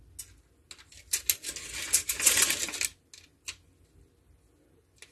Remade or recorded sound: recorded